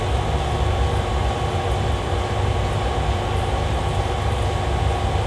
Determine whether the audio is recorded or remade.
recorded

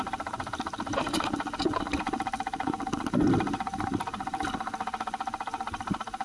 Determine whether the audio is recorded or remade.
recorded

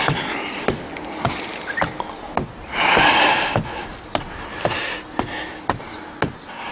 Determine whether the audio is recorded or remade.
recorded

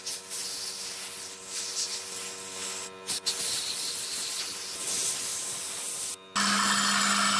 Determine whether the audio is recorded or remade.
recorded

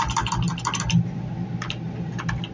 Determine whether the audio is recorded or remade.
recorded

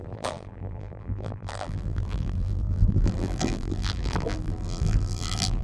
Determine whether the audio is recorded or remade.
remade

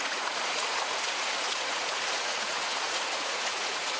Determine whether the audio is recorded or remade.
remade